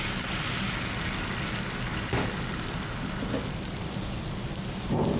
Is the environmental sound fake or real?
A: real